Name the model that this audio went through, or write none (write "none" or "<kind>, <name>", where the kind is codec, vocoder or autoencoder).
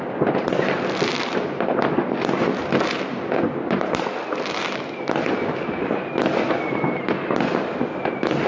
none